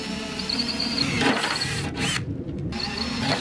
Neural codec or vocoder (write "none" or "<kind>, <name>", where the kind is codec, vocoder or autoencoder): none